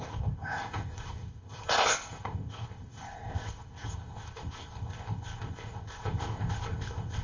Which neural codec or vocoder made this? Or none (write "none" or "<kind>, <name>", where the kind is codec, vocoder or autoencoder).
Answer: codec, ZipCodec